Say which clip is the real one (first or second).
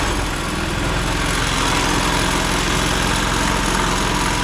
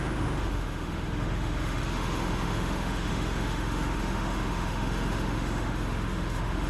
first